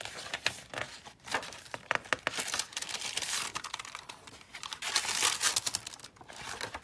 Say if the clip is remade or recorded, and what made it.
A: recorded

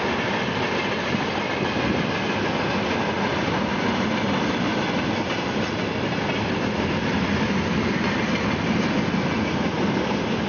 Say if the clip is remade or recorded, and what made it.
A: recorded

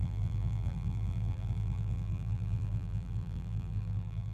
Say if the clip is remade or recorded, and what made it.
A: remade, vocoder, BigVGAN v2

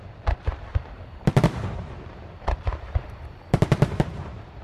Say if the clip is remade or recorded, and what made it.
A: remade, vocoder, BigVGAN v2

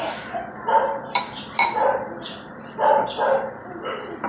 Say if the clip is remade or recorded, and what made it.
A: remade, vocoder, BigVGAN v2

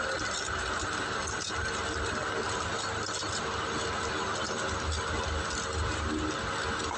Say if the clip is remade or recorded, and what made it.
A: recorded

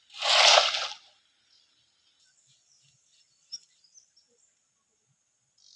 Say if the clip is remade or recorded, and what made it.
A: recorded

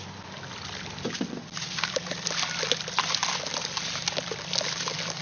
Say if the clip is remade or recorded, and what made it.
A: recorded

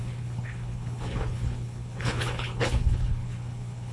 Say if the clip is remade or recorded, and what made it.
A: remade, codec, HILCodec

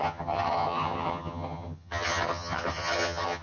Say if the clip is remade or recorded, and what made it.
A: remade, vocoder, HiFi-GAN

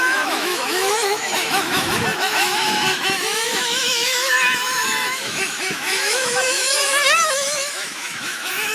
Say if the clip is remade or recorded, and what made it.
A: remade, autoencoder, DAC-VAE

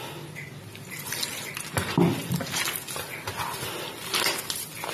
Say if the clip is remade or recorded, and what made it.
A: recorded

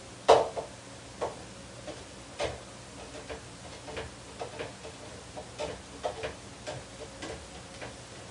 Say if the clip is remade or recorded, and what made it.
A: recorded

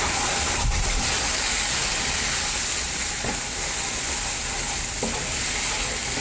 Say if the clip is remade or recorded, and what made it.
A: recorded